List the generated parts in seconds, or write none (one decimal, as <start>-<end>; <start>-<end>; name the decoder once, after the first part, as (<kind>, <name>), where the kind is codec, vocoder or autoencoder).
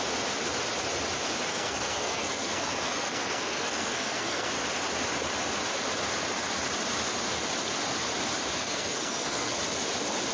1.5-4.5 (codec, SNAC); 8.6-9.6